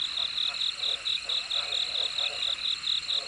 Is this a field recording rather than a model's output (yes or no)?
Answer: yes